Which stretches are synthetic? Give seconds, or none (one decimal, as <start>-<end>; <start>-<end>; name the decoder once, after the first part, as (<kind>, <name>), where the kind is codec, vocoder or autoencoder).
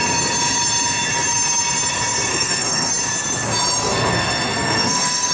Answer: 2.3-2.9 (codec, SNAC); 3.8-5.3